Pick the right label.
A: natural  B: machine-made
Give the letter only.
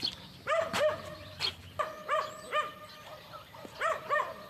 B